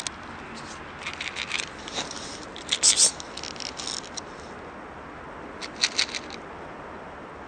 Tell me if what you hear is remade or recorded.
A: recorded